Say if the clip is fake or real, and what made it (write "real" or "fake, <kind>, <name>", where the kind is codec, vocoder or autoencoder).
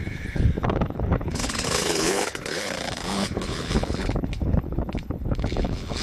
fake, codec, HILCodec